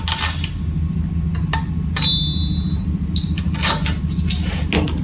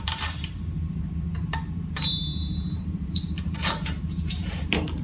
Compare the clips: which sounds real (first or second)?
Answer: first